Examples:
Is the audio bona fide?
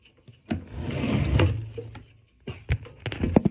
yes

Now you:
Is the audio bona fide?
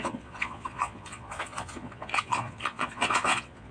no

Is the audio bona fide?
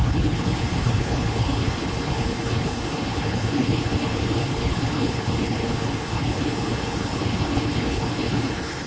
no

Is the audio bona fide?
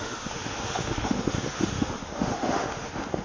no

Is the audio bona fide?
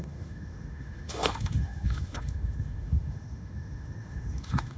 no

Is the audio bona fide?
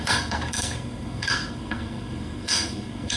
no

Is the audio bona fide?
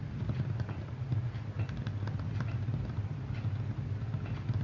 yes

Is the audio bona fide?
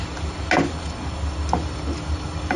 yes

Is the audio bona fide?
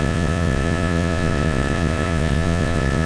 no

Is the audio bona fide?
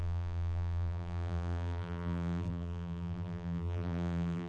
no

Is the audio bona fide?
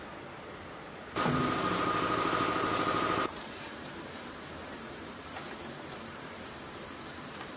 no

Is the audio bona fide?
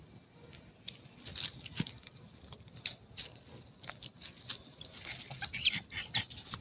yes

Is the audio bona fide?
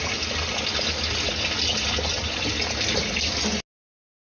yes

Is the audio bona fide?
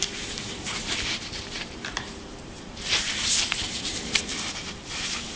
no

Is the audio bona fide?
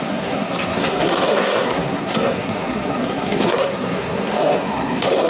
no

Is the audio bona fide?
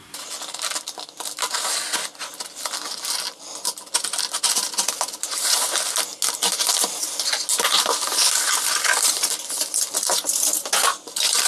yes